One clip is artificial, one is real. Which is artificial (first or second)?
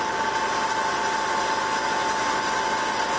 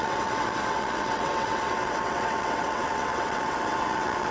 second